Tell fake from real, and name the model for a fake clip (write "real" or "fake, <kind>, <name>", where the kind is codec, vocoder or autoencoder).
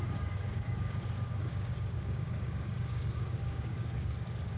fake, codec, DAC